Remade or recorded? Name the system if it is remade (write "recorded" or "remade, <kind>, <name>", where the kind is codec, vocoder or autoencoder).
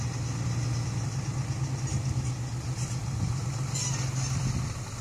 recorded